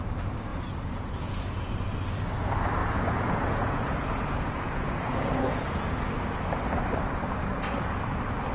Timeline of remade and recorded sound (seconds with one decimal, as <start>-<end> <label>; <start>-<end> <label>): 0.0-0.5 recorded; 0.5-1.7 remade; 1.7-2.8 recorded; 2.8-6.1 remade; 6.1-8.5 recorded